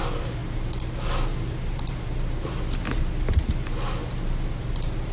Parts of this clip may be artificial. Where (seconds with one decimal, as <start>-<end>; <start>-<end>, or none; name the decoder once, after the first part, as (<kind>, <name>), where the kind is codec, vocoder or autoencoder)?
none